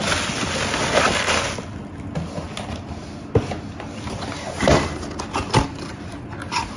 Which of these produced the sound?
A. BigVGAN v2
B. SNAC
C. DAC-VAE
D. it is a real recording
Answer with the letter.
D